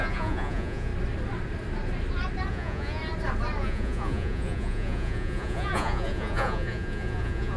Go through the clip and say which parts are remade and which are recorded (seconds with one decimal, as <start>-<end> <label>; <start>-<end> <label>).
0.0-0.9 remade; 0.9-2.5 recorded; 2.5-3.0 remade; 3.0-3.6 recorded; 3.6-7.6 remade